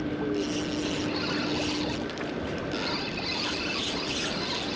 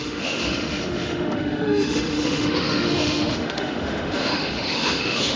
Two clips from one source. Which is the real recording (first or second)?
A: first